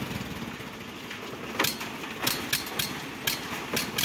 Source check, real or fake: real